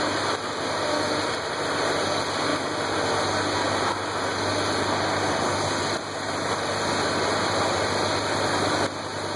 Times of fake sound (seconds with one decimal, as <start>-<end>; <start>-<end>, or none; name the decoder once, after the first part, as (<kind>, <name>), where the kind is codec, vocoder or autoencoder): none